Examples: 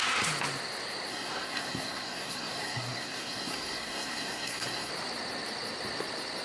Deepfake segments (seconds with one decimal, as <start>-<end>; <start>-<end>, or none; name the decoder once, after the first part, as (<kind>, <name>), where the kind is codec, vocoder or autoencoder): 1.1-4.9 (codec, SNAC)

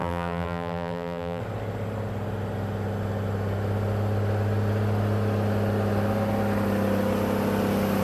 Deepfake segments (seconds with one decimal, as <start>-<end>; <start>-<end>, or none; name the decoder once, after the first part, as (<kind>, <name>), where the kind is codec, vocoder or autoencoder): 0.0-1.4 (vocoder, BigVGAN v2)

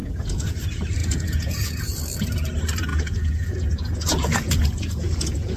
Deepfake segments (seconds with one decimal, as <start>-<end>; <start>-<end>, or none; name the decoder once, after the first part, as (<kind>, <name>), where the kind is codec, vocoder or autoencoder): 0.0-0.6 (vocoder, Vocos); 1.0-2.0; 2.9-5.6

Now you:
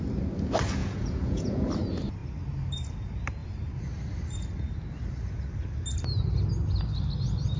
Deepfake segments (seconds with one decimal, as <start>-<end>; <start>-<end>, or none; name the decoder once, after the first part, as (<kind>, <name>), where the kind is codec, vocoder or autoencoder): 0.8-1.7 (vocoder, Vocos)

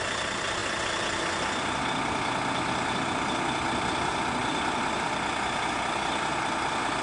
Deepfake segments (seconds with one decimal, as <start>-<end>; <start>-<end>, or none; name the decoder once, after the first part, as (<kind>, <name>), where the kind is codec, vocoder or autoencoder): 0.0-0.6 (vocoder, BigVGAN v2); 4.8-7.0

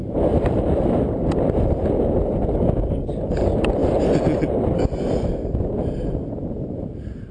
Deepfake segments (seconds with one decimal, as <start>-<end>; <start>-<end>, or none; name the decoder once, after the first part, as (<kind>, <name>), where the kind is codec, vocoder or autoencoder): 0.0-0.6 (vocoder, BigVGAN v2)